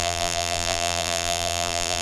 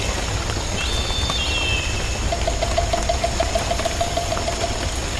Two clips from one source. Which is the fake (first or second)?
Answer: first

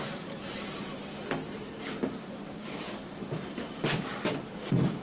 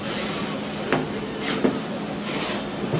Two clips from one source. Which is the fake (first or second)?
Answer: first